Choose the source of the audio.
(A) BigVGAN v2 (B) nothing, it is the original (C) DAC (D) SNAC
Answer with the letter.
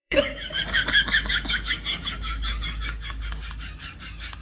C